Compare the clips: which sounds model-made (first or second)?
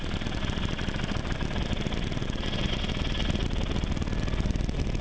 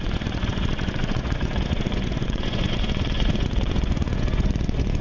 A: second